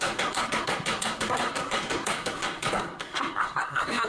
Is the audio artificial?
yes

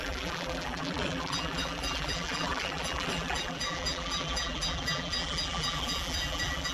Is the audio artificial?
yes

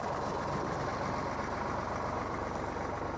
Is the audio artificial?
no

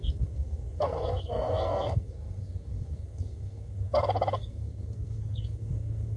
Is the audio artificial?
yes